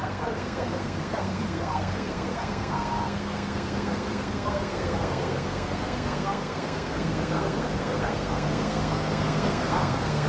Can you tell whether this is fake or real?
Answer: fake